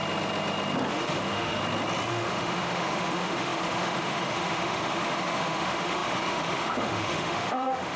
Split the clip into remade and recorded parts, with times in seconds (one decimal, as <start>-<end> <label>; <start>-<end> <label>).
0.0-0.9 recorded; 0.9-1.6 remade; 1.6-2.1 recorded; 2.1-8.0 remade